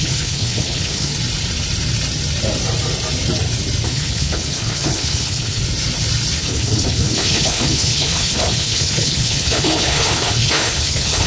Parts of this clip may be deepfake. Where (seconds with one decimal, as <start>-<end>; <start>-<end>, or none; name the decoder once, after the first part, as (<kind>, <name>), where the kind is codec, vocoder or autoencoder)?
0.0-1.1 (codec, HILCodec); 3.9-5.6; 6.4-11.3